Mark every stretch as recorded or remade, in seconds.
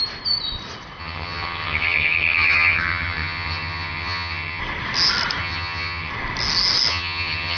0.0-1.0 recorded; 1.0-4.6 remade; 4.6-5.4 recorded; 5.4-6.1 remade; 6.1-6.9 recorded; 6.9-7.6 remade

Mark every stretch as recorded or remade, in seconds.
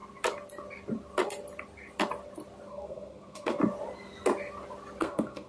0.0-2.7 recorded; 2.7-3.6 remade; 3.6-5.0 recorded; 5.0-5.5 remade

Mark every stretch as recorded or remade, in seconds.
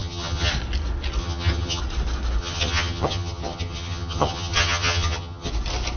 0.0-0.5 remade; 0.5-1.2 recorded; 1.2-1.8 remade; 1.8-2.4 recorded; 2.4-5.5 remade; 5.5-6.0 recorded